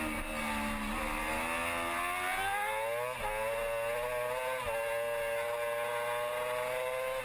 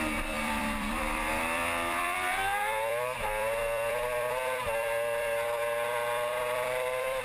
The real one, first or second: first